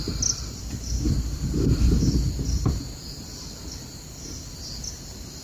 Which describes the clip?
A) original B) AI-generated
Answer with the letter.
A